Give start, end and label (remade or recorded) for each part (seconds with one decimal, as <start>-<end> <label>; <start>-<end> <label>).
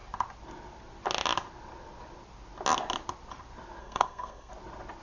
0.0-3.8 recorded; 3.8-4.5 remade; 4.5-5.0 recorded